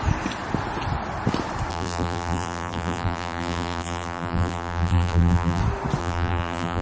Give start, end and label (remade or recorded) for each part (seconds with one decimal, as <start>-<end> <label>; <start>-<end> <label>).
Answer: 0.0-1.7 recorded; 1.7-5.6 remade; 5.6-6.0 recorded; 6.0-6.8 remade